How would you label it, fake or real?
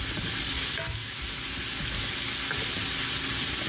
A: real